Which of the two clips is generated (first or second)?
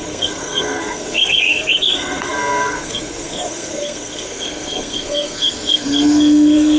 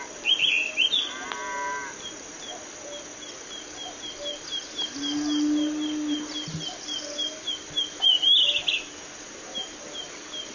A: first